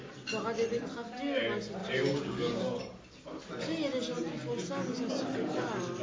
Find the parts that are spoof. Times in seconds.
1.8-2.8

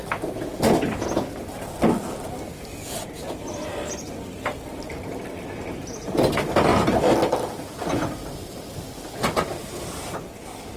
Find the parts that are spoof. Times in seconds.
none

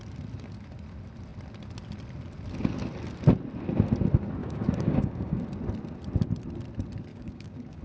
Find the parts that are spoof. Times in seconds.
4.4-5.4; 7.1-7.8

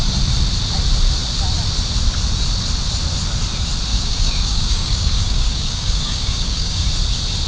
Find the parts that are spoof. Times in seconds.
3.9-6.9

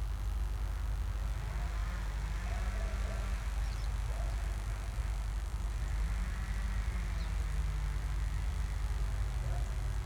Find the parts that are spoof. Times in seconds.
none

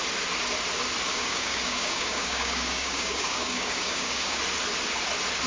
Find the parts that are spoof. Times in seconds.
1.1-4.4